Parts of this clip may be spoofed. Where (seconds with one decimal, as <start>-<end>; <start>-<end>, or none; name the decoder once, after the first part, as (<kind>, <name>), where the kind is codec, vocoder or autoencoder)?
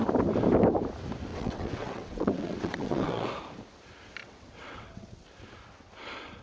1.3-3.3 (vocoder, WaveNeXt); 4.2-5.1